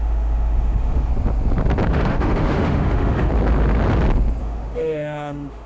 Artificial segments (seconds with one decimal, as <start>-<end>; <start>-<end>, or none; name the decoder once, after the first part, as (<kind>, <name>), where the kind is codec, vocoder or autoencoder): 0.0-1.1 (autoencoder, DAC-VAE); 1.9-3.3; 4.4-5.7